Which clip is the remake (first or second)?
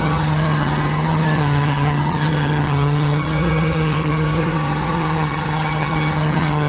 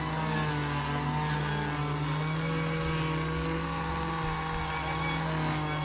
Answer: first